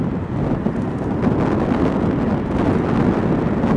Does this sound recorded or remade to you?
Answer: recorded